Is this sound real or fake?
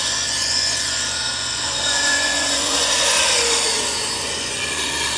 fake